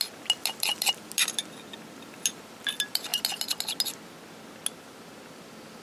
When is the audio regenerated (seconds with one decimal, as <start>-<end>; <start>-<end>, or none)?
none

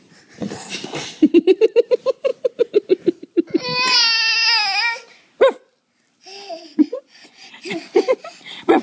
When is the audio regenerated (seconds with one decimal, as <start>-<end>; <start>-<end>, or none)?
6.7-7.5

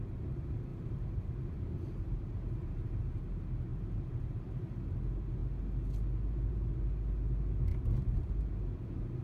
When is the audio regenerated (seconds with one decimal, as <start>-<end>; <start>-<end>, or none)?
0.7-3.2; 3.7-4.7; 7.7-8.5

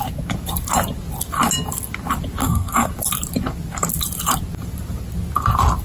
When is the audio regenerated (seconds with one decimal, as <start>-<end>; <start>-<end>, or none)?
2.4-2.9

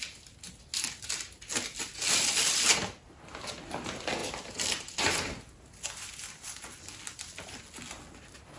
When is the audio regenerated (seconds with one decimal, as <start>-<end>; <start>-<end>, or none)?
none

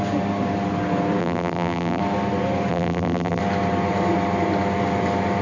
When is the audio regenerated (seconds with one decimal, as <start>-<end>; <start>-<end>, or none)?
1.2-2.0; 2.7-3.4